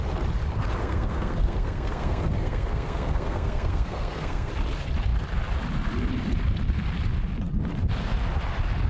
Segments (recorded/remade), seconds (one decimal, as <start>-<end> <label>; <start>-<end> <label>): 0.0-0.8 recorded; 0.8-4.5 remade; 4.5-8.9 recorded